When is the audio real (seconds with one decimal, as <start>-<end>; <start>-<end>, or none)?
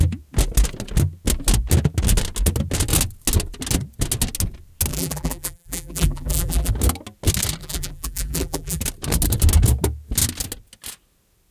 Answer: 0.0-4.9; 6.7-7.6; 8.8-11.5